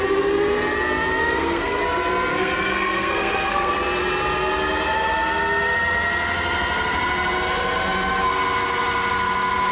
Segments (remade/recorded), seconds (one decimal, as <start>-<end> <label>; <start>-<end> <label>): 0.0-1.2 recorded; 1.2-1.8 remade; 1.8-2.3 recorded; 2.3-3.7 remade; 3.7-9.7 recorded